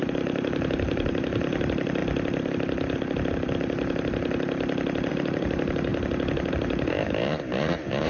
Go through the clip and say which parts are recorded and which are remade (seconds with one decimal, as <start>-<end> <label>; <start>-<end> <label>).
0.0-2.0 remade; 2.0-5.1 recorded; 5.1-5.9 remade; 5.9-6.5 recorded; 6.5-8.1 remade